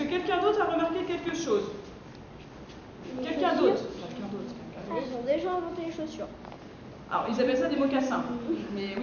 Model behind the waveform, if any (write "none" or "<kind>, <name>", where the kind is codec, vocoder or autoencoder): none